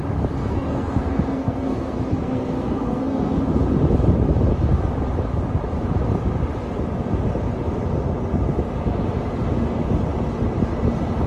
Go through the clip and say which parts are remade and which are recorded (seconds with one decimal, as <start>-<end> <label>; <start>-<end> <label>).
0.0-0.4 recorded; 0.4-3.4 remade; 3.4-11.3 recorded